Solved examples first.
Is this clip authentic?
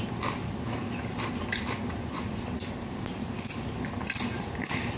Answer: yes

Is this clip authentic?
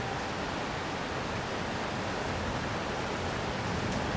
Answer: yes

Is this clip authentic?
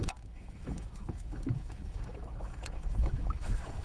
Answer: no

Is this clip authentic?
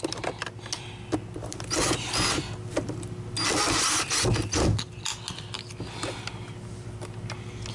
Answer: yes